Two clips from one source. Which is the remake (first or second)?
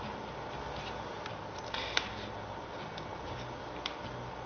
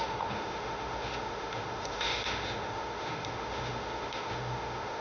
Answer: second